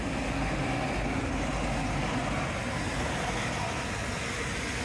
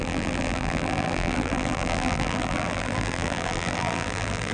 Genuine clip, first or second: first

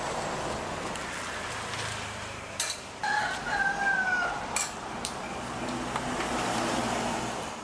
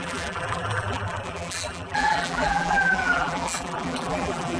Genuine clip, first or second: first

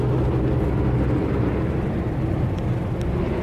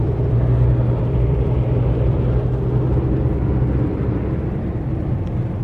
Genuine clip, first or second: first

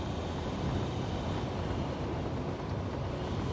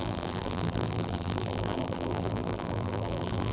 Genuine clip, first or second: first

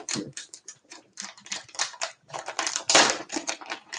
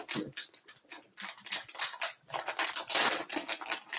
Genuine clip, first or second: second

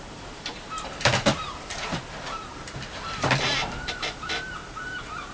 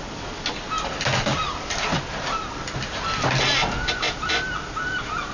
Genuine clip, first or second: second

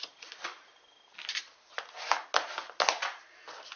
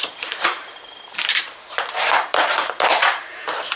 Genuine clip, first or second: first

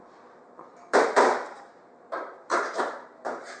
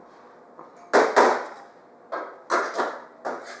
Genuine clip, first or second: second